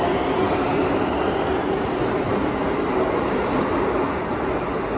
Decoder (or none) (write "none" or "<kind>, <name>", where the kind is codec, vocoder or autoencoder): none